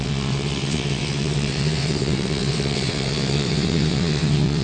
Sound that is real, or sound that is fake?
fake